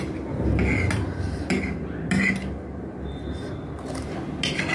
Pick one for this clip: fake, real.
real